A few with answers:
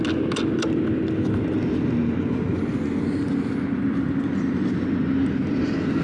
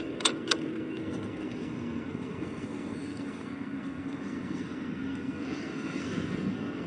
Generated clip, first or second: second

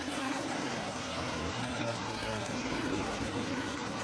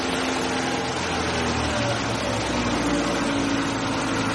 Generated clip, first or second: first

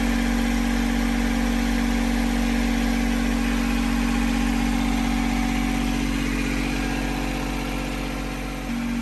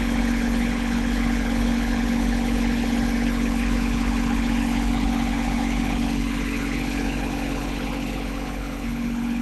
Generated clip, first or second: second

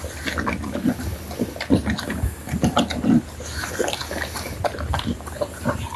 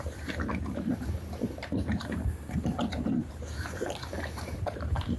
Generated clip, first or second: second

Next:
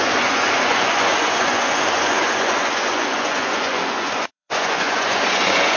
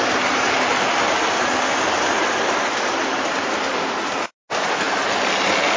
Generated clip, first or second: first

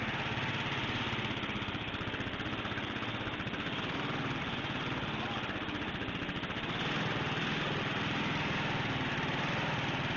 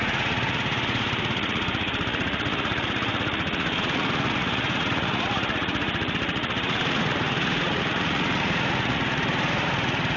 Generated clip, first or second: second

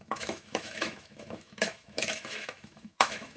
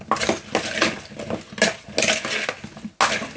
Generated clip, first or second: first